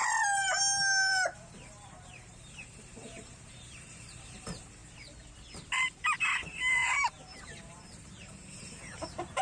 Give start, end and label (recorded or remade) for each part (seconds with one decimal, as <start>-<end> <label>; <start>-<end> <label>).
0.0-1.1 recorded; 1.1-4.8 remade; 4.8-6.2 recorded; 6.2-9.4 remade